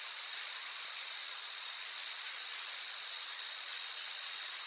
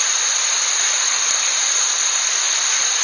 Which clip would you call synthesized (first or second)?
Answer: first